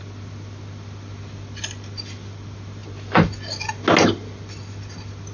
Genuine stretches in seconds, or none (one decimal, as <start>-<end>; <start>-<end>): 0.0-5.3